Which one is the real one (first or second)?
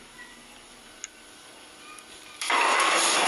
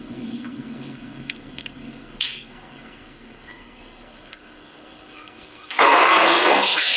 first